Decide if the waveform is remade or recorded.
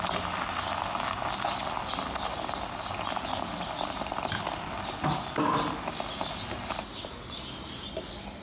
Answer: recorded